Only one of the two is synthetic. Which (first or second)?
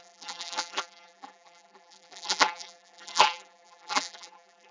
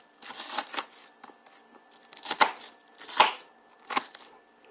first